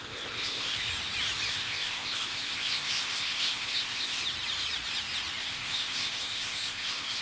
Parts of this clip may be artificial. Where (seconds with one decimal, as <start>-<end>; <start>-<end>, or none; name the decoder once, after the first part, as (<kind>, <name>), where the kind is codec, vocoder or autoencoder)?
0.0-0.9 (codec, ZipCodec); 1.5-4.2; 5.4-7.2